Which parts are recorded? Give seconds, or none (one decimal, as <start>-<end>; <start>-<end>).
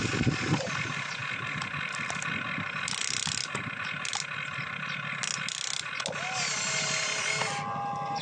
0.0-8.2